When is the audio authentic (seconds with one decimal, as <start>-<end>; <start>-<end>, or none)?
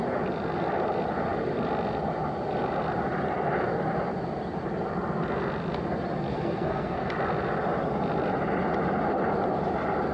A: 0.0-6.3; 7.1-10.1